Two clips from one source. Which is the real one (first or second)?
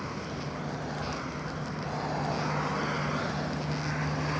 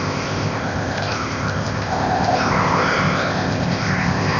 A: first